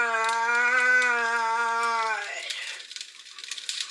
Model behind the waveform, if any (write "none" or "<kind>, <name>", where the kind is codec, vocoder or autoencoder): none